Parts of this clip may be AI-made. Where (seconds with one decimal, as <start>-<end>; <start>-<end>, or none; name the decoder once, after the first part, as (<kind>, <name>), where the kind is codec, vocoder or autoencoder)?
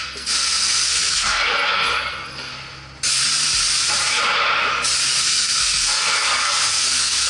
0.0-2.5 (codec, SNAC); 5.2-7.3